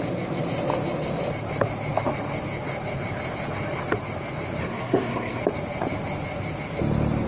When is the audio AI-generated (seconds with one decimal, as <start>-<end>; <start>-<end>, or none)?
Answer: 4.6-5.4